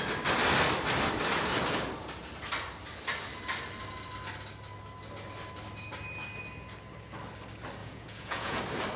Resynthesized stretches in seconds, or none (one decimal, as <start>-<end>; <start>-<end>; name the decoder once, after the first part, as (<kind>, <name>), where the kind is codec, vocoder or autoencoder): 7.8-8.6 (vocoder, Vocos)